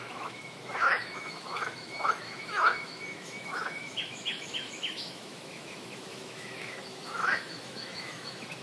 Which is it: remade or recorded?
remade